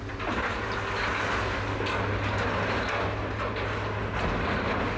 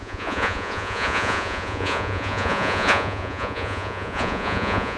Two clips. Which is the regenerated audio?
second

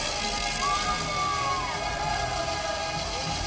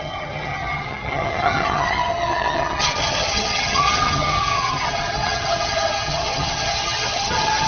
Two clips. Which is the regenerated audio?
second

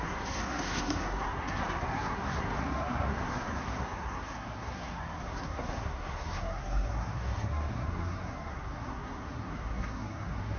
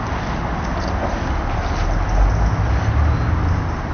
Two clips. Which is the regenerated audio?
first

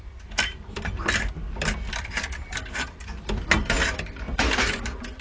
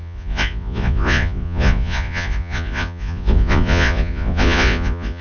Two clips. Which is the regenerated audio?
second